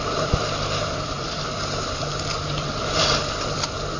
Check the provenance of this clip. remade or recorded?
remade